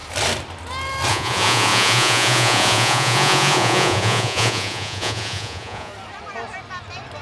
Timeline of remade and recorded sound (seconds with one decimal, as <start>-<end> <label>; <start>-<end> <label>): 0.0-1.1 recorded; 1.1-5.9 remade; 5.9-7.2 recorded

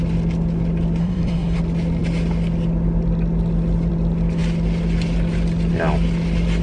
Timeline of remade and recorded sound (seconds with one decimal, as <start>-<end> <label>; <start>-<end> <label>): 0.0-1.0 recorded; 1.0-1.6 remade; 1.6-6.6 recorded

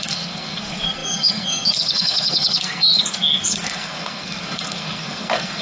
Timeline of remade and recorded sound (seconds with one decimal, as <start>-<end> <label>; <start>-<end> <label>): 0.0-5.6 remade